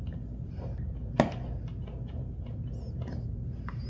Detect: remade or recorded recorded